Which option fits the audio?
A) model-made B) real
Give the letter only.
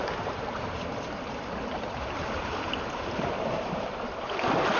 A